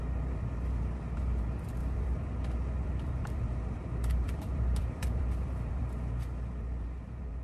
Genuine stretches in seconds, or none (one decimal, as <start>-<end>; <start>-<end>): 0.0-1.8; 6.2-7.4